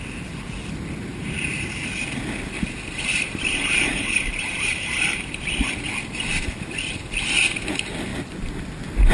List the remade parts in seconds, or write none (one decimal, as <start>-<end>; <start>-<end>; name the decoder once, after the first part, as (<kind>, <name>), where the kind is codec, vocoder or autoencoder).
3.1-5.5 (vocoder, BigVGAN v2)